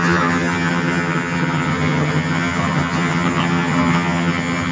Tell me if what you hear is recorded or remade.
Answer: remade